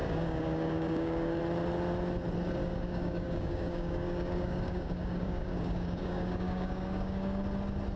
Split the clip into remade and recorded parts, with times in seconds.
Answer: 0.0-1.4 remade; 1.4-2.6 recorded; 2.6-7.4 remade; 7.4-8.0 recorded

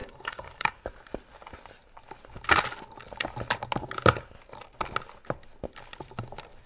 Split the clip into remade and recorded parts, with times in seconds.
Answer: 0.0-0.7 remade; 0.7-6.7 recorded

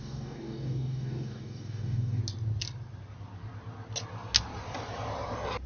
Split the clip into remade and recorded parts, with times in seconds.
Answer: 0.0-2.2 remade; 2.2-5.7 recorded

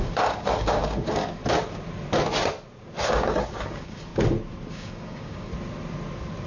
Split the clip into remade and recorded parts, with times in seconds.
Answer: 0.0-1.4 remade; 1.4-3.1 recorded; 3.1-4.1 remade; 4.1-4.7 recorded; 4.7-5.5 remade; 5.5-6.5 recorded

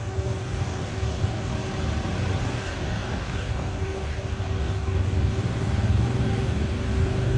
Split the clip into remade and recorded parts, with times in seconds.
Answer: 0.0-1.5 remade; 1.5-2.4 recorded; 2.4-7.4 remade

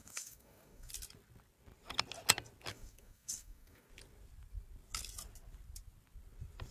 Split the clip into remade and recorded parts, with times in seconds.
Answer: 0.0-0.9 remade; 0.9-2.7 recorded; 2.7-3.9 remade; 3.9-6.7 recorded

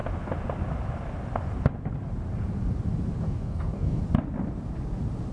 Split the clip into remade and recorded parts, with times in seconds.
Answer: 0.0-3.2 recorded; 3.2-4.0 remade; 4.0-5.3 recorded

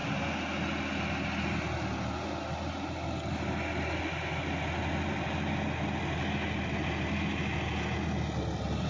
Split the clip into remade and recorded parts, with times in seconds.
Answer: 0.0-8.9 recorded